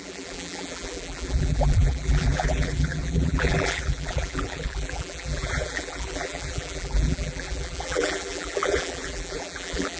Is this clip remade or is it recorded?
remade